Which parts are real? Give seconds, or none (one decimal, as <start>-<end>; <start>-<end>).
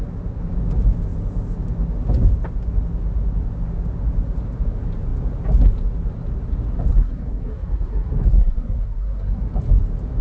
0.0-6.9; 9.5-10.2